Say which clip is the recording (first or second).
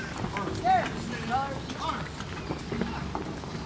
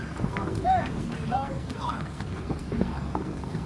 first